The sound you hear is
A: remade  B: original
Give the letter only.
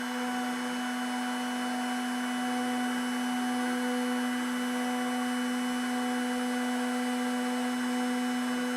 B